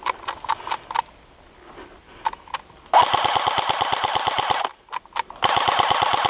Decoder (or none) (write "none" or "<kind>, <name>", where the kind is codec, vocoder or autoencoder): none